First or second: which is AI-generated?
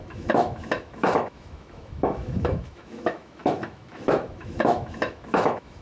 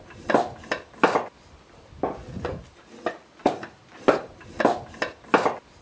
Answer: first